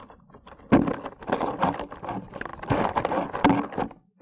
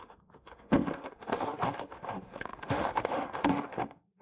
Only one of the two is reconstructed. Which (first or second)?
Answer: second